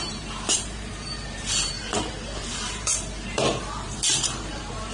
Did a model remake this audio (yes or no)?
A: yes